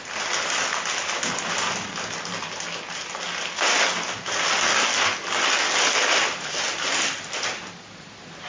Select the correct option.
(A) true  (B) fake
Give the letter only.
A